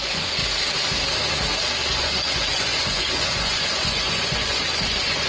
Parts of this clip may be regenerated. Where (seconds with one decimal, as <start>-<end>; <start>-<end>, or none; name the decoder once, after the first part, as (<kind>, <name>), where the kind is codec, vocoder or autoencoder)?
0.0-0.4 (vocoder, Vocos); 1.9-5.3